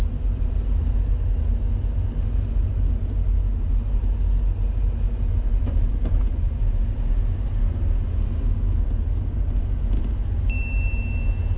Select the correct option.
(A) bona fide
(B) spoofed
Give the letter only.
A